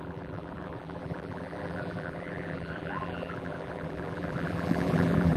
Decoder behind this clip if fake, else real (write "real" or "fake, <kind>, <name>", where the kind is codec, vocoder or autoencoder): fake, vocoder, BigVGAN v2